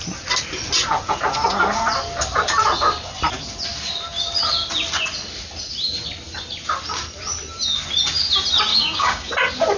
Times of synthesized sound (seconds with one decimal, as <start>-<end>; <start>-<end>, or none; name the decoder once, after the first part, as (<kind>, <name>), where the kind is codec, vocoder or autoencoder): 8.7-9.3 (codec, DAC)